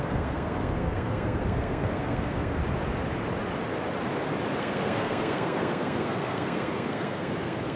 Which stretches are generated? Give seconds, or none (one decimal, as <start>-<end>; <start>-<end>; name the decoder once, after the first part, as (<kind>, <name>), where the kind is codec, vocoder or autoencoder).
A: 0.0-2.6 (codec, SNAC); 4.6-7.8